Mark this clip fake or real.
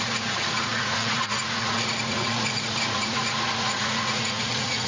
fake